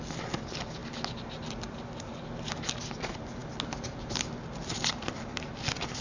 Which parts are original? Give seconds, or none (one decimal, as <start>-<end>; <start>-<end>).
0.0-6.0